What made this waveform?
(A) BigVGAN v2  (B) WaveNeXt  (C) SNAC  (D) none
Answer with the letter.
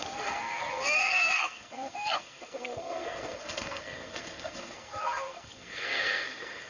C